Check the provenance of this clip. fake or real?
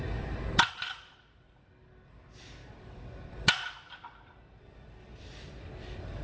real